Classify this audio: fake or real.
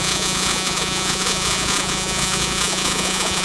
fake